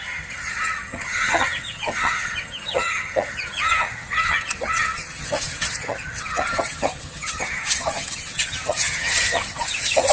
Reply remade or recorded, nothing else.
remade